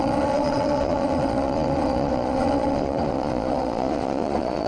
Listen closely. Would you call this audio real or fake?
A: fake